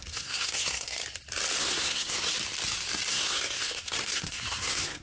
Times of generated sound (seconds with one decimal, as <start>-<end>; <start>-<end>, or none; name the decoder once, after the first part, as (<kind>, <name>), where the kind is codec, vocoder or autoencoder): 0.0-1.0 (codec, SNAC); 1.6-2.3; 3.1-5.0